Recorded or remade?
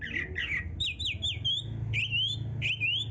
recorded